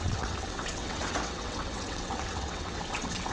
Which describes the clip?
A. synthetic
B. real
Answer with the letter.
A